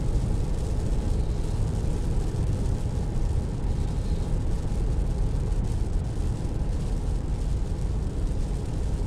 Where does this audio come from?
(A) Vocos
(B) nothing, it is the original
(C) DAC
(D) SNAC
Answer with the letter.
B